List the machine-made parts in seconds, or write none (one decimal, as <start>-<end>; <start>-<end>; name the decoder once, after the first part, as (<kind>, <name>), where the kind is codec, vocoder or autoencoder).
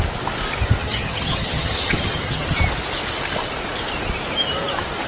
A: 0.8-2.6 (vocoder, HiFi-GAN)